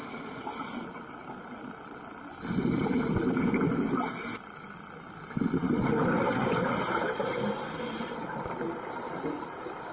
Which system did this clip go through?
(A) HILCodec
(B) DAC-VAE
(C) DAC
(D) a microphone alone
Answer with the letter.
D